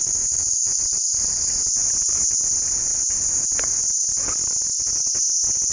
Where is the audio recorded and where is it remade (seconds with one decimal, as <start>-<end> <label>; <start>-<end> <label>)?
0.0-0.8 remade; 0.8-5.7 recorded